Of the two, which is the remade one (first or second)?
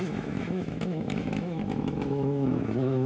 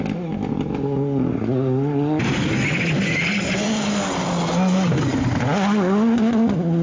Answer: first